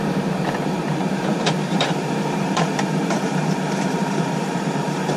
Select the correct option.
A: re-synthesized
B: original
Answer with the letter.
A